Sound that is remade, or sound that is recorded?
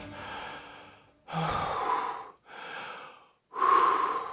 recorded